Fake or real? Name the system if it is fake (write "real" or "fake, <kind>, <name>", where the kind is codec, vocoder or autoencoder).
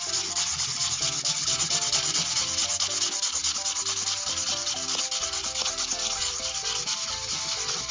real